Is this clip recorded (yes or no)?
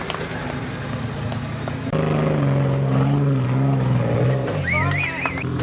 yes